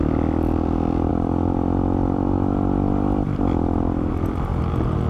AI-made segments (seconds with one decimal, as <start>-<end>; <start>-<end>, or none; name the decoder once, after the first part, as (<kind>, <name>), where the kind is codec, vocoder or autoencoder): 1.1-4.1 (vocoder, BigVGAN v2)

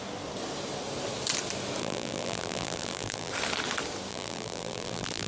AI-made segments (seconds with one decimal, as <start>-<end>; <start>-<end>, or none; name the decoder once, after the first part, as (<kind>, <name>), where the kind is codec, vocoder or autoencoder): 1.8-3.3 (vocoder, BigVGAN v2); 4.1-5.3

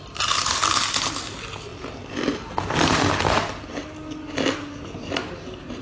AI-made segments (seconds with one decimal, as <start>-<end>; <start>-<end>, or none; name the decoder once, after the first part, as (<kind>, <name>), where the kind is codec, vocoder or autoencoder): none